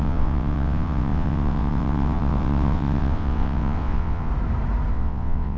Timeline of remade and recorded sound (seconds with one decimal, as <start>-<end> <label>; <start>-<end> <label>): 0.0-4.3 remade; 4.3-4.9 recorded; 4.9-5.6 remade